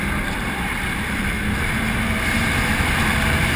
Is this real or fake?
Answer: fake